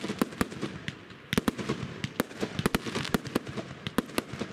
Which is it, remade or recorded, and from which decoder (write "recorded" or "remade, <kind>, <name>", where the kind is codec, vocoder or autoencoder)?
recorded